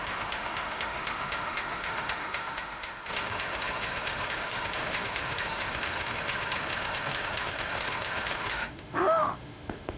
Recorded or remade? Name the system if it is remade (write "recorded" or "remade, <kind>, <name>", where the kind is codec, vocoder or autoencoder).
remade, autoencoder, DAC-VAE